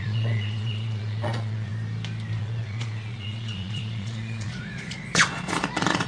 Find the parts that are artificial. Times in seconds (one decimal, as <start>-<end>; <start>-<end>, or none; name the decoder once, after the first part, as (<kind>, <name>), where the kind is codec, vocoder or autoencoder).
0.0-1.7 (vocoder, Vocos); 2.4-6.1